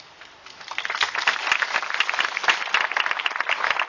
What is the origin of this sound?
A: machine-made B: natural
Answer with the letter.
B